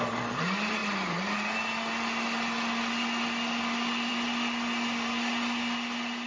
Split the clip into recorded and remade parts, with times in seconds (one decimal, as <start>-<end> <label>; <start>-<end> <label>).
0.0-6.3 recorded